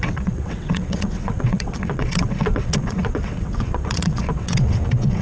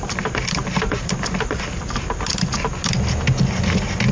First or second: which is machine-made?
first